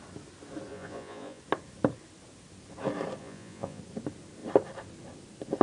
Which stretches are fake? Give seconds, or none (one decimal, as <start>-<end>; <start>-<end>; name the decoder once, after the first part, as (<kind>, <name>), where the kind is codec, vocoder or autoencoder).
0.7-1.4 (vocoder, Vocos); 3.2-3.8